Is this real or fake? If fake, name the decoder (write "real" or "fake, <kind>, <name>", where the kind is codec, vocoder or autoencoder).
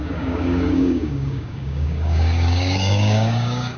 fake, codec, DAC